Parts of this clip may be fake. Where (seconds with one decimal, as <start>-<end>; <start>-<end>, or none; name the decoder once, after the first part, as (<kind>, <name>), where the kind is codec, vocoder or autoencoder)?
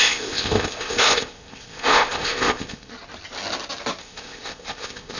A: 0.0-2.9 (codec, ZipCodec); 4.0-5.2